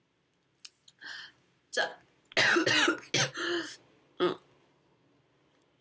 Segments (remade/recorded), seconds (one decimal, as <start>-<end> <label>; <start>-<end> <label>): 0.0-5.8 recorded